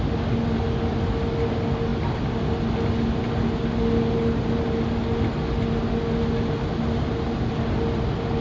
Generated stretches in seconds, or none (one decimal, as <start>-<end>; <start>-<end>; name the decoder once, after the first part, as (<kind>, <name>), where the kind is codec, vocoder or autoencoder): none